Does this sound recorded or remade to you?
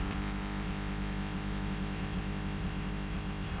remade